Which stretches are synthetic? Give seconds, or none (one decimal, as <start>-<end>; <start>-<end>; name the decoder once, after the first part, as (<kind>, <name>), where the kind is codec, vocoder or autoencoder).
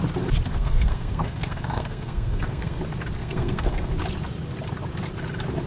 0.5-2.8 (codec, SNAC); 3.2-3.9